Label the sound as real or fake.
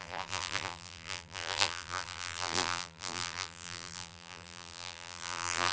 fake